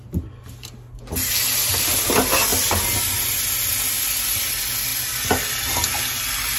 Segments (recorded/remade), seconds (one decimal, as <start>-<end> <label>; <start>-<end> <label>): 0.0-6.6 recorded